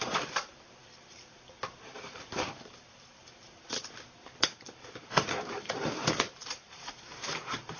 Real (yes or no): no